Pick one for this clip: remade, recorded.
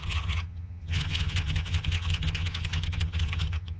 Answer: remade